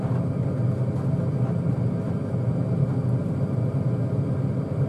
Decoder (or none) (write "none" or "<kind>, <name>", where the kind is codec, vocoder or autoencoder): none